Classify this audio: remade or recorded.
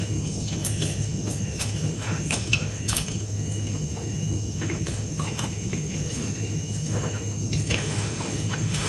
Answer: remade